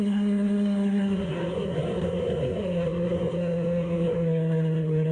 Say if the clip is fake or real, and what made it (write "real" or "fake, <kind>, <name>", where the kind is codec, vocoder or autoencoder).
fake, codec, SNAC